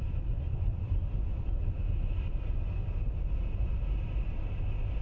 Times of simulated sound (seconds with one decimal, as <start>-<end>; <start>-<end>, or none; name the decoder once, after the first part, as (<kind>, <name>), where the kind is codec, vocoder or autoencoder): 0.0-1.3 (vocoder, BigVGAN v2); 3.3-5.0